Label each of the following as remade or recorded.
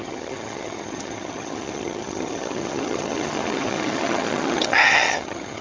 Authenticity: remade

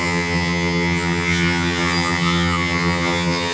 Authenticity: remade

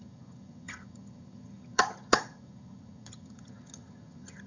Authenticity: remade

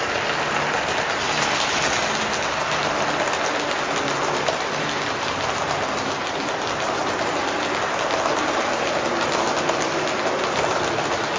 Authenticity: recorded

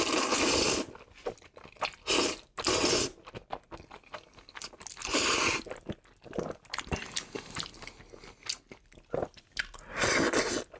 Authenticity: recorded